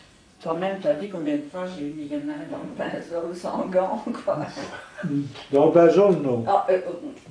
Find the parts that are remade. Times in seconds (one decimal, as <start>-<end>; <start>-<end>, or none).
0.0-2.7